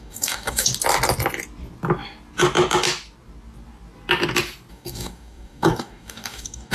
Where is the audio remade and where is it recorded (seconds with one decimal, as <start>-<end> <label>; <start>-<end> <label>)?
0.0-0.7 remade; 0.7-4.7 recorded; 4.7-6.7 remade

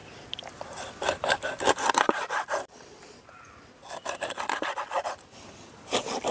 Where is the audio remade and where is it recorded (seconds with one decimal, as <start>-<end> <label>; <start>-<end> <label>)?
0.0-3.8 remade; 3.8-6.3 recorded

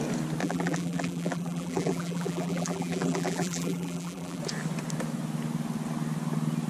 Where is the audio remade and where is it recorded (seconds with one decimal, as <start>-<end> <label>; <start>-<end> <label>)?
0.0-0.4 recorded; 0.4-4.4 remade; 4.4-6.7 recorded

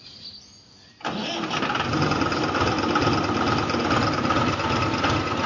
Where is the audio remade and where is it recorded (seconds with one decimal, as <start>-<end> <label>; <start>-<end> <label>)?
0.0-5.5 recorded